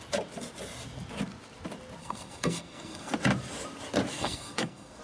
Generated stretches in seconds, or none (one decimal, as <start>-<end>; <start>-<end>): 2.0-3.1; 4.1-5.0